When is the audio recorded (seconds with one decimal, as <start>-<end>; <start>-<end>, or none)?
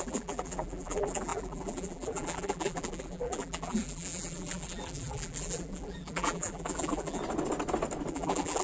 7.2-8.1